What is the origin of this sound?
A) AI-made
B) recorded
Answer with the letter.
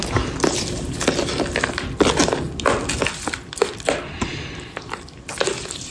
B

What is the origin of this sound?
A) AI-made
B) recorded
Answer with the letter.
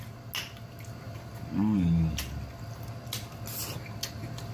B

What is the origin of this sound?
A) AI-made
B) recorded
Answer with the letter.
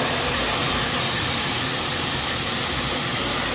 B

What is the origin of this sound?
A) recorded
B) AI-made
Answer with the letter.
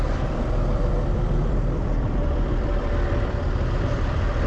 B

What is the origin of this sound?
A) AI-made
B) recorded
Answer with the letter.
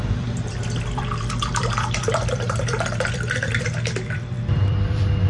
A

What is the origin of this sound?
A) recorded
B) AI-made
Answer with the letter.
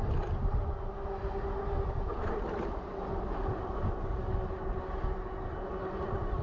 A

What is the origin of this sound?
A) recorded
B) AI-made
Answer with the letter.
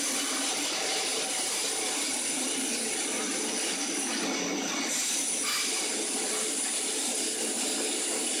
A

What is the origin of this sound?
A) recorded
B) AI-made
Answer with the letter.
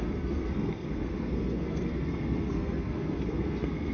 B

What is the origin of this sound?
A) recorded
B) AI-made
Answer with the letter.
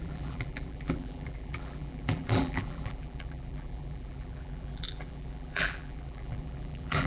B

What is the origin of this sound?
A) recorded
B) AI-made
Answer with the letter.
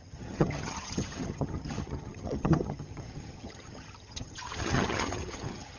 B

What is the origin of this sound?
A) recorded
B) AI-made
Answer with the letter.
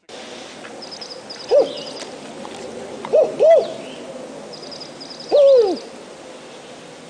A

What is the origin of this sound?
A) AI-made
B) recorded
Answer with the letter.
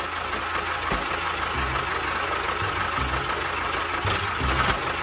B